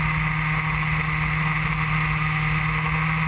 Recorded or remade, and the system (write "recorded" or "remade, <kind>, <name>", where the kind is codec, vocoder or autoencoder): recorded